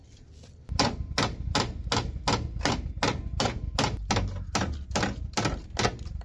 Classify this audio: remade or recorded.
recorded